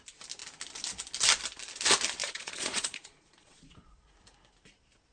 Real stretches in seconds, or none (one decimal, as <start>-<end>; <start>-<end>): 0.0-2.2; 4.1-5.1